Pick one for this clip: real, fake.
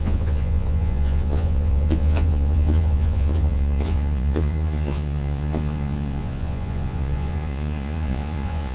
fake